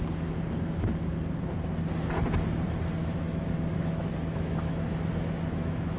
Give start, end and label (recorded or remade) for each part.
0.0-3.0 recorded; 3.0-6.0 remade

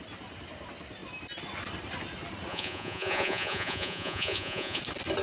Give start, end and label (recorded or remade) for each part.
0.0-2.5 recorded; 2.5-4.8 remade; 4.8-5.2 recorded

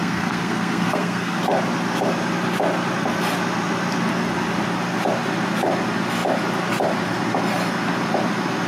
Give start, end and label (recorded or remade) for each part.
0.0-1.4 remade; 1.4-8.7 recorded

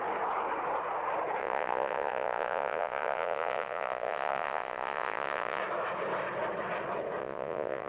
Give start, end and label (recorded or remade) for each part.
0.0-1.4 recorded; 1.4-5.6 remade; 5.6-7.2 recorded; 7.2-7.9 remade

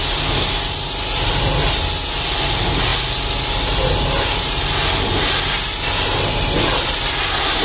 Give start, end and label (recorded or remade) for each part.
0.0-7.6 recorded

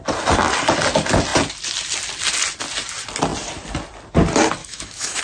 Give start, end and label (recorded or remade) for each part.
0.0-4.6 recorded; 4.6-5.2 remade

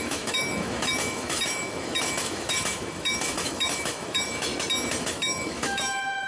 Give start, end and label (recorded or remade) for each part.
0.0-4.5 remade; 4.5-5.0 recorded; 5.0-6.3 remade